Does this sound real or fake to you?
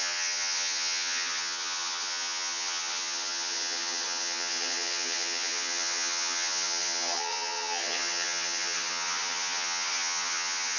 fake